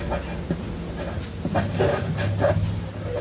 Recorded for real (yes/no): yes